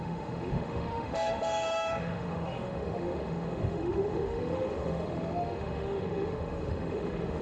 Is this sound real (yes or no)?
no